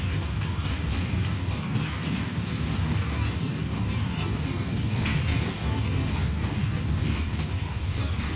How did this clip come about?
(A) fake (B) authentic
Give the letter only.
A